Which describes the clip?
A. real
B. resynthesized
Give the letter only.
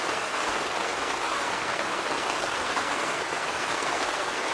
B